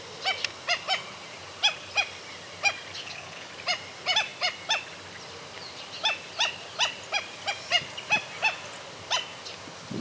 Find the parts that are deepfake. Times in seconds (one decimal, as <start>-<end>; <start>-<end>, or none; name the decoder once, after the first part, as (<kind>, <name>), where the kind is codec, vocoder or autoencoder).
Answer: 3.0-3.5 (codec, HILCodec)